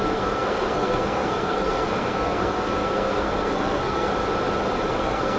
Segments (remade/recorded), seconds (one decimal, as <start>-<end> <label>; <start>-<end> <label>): 0.0-4.1 remade; 4.1-4.9 recorded; 4.9-5.4 remade

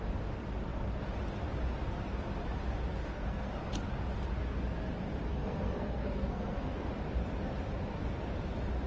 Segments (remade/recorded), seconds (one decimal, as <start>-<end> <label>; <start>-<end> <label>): 0.0-3.0 recorded; 3.0-3.5 remade; 3.5-5.3 recorded; 5.3-6.9 remade; 6.9-8.9 recorded